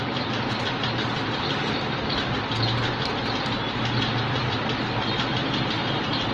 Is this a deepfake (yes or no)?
no